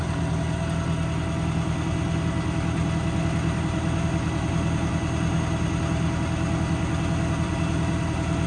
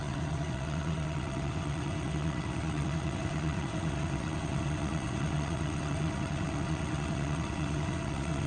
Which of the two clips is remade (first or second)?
second